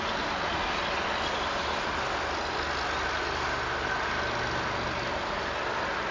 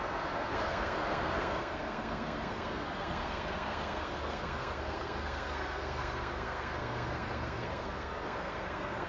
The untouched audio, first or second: first